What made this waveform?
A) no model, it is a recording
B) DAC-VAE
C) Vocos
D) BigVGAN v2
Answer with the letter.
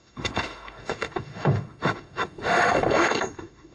B